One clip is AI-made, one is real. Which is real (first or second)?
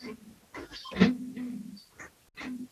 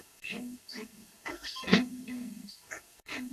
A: first